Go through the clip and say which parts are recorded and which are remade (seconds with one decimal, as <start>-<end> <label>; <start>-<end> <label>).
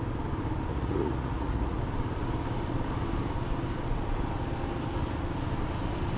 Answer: 0.0-0.7 recorded; 0.7-1.8 remade; 1.8-6.2 recorded